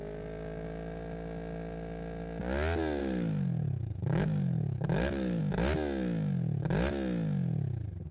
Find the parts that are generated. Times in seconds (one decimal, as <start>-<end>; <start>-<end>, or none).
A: 3.0-5.4